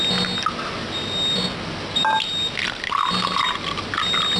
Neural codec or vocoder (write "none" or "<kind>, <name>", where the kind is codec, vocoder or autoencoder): none